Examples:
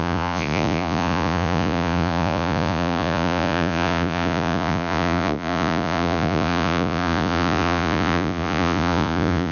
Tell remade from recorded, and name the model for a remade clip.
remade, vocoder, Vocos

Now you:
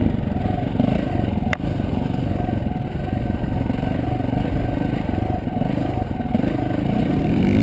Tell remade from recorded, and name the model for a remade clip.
recorded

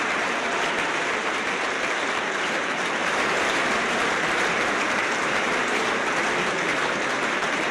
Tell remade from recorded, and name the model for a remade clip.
remade, vocoder, BigVGAN v2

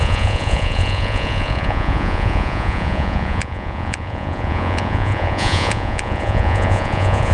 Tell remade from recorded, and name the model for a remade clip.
remade, vocoder, Vocos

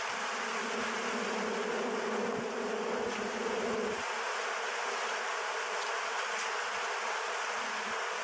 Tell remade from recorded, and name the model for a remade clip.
recorded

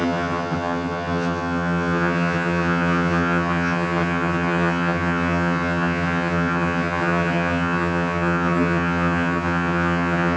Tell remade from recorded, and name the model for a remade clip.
remade, vocoder, HiFi-GAN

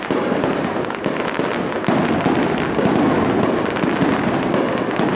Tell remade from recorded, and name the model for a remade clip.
recorded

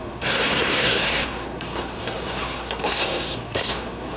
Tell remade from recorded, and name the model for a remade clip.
remade, codec, SNAC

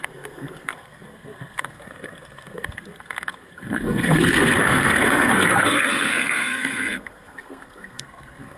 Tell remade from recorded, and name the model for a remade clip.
remade, codec, SNAC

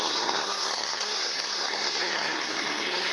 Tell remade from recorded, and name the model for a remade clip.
remade, codec, SNAC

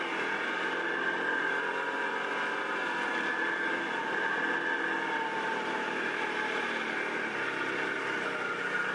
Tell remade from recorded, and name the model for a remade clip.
recorded